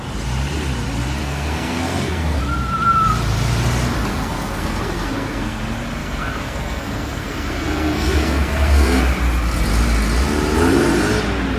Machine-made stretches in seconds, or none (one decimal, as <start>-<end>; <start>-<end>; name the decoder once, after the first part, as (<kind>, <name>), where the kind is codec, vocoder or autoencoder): 1.2-2.4 (codec, SNAC); 4.1-5.6; 6.0-9.0